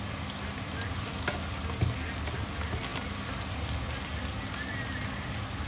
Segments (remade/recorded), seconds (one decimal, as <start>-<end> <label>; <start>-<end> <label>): 0.0-5.7 recorded